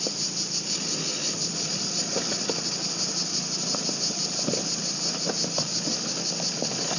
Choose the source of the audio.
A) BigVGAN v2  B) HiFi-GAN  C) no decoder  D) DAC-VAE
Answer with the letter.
C